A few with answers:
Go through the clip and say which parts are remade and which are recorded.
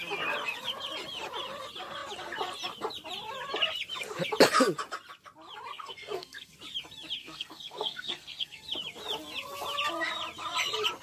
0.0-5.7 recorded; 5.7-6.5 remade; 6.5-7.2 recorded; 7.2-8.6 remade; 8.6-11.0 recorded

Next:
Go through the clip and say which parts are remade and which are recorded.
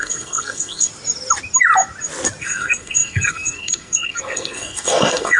0.0-0.9 remade; 0.9-2.4 recorded; 2.4-5.4 remade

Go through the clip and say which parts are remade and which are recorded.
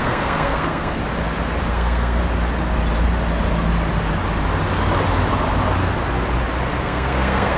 0.0-1.0 remade; 1.0-1.7 recorded; 1.7-2.2 remade; 2.2-6.8 recorded; 6.8-7.6 remade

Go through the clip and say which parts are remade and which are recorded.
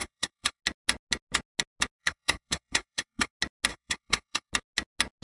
0.0-0.6 remade; 0.6-2.0 recorded; 2.0-3.3 remade; 3.3-3.7 recorded; 3.7-4.5 remade; 4.5-5.2 recorded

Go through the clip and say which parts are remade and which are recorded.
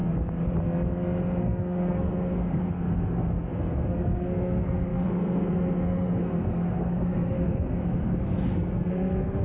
0.0-1.4 recorded; 1.4-9.4 remade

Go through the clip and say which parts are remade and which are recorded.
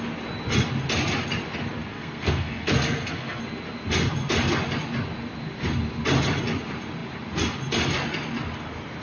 0.0-1.9 recorded; 1.9-3.4 remade; 3.4-9.0 recorded